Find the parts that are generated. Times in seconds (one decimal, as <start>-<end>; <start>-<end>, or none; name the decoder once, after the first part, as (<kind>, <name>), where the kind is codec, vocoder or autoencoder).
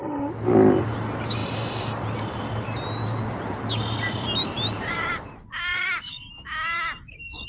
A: 3.2-5.3 (vocoder, BigVGAN v2); 5.7-6.3